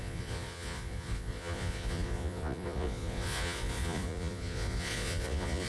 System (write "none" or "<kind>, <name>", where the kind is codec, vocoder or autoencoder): vocoder, Vocos